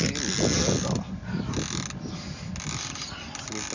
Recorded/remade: recorded